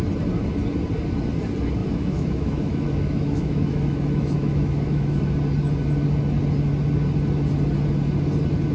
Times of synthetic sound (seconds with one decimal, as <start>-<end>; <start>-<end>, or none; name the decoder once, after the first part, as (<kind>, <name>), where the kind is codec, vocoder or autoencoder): 1.8-5.2 (autoencoder, DAC-VAE)